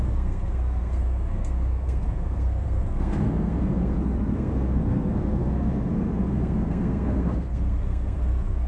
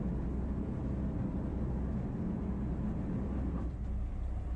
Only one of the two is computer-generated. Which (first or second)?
first